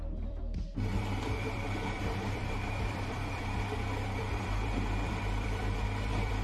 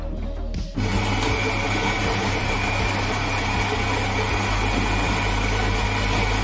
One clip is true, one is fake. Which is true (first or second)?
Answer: second